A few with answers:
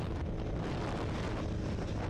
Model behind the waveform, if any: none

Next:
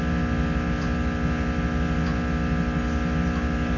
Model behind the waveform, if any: none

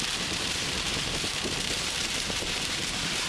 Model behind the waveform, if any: vocoder, BigVGAN v2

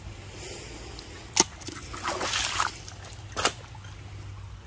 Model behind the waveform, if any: none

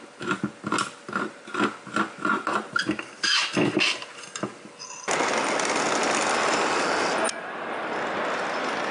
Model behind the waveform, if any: none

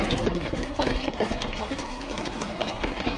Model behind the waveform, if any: codec, SNAC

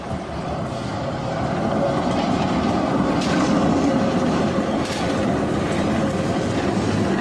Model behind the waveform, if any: none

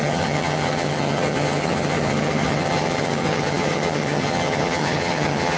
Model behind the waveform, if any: vocoder, HiFi-GAN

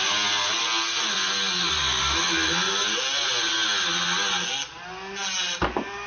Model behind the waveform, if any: none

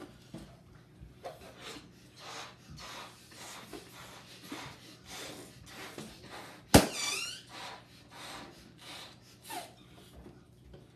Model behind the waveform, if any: none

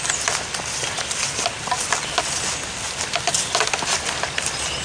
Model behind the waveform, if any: none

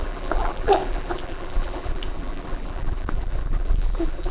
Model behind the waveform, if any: vocoder, BigVGAN v2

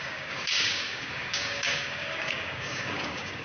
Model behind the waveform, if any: codec, DAC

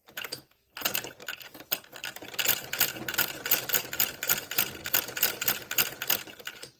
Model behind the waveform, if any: none